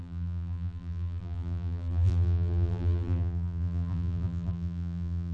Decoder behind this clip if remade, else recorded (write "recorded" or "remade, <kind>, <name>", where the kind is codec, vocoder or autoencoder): remade, vocoder, BigVGAN v2